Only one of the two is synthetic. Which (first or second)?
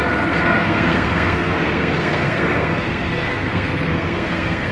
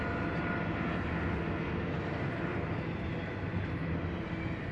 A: first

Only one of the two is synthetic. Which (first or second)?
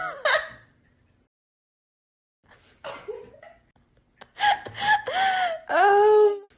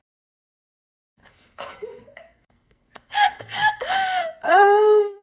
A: second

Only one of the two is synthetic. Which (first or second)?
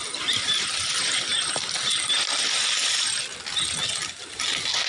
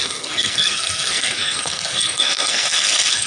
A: second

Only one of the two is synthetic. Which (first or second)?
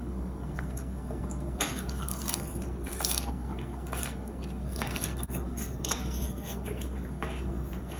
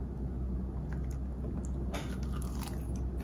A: first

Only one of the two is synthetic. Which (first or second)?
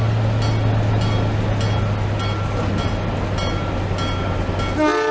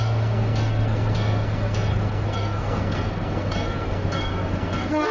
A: second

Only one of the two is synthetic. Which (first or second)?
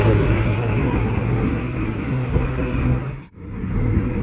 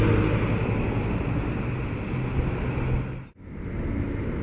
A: first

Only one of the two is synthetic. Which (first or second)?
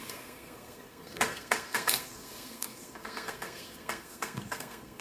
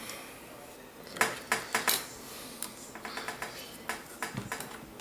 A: first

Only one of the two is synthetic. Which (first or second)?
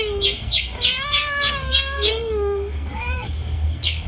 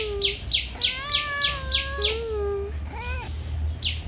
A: first